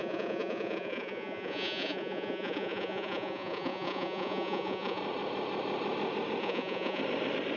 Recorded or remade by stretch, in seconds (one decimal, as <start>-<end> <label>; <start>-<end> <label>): 0.0-5.0 remade; 5.0-6.4 recorded; 6.4-7.0 remade; 7.0-7.6 recorded